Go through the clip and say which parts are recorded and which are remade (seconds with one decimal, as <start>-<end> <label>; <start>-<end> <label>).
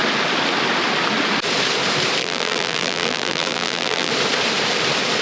0.0-2.2 recorded; 2.2-4.1 remade; 4.1-5.2 recorded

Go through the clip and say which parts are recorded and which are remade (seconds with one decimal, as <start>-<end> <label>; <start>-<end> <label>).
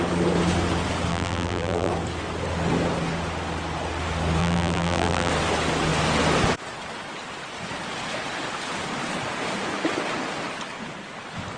0.0-1.1 recorded; 1.1-1.9 remade; 1.9-4.4 recorded; 4.4-5.3 remade; 5.3-11.6 recorded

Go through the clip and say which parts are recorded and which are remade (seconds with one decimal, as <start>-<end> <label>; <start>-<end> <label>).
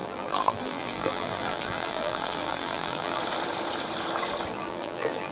0.0-3.2 remade; 3.2-4.5 recorded; 4.5-5.3 remade